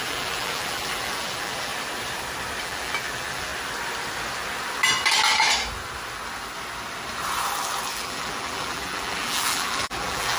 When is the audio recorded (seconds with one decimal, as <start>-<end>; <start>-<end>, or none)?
1.7-2.6; 3.5-7.9